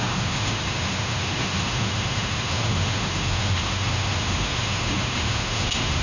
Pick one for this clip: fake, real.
fake